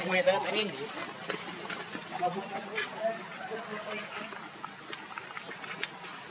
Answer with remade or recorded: recorded